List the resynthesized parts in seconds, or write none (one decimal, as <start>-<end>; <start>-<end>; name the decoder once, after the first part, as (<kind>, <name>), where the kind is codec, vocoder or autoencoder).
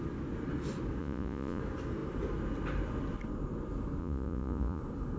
1.0-1.6 (vocoder, Vocos); 4.0-4.8